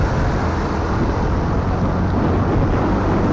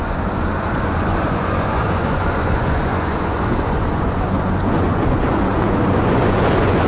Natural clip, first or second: first